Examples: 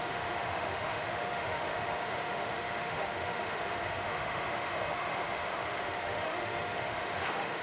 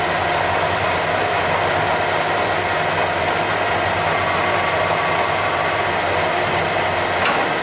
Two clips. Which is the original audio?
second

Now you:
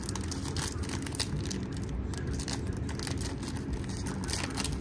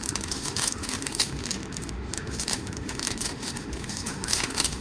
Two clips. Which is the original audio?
first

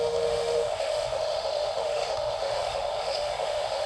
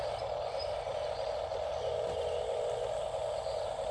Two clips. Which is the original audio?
second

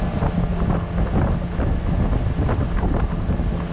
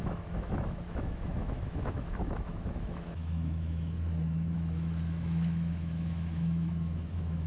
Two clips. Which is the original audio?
first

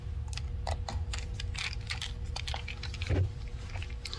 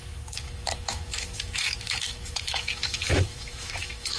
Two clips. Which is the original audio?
first